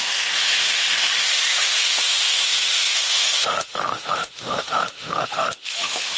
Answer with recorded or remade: remade